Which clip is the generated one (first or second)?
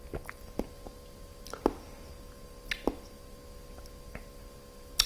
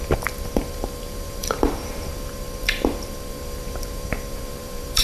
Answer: second